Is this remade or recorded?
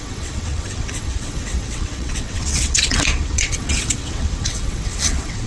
remade